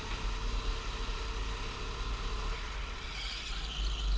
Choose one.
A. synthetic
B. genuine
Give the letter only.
B